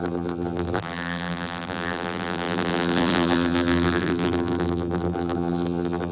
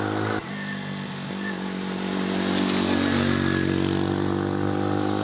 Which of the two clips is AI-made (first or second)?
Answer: first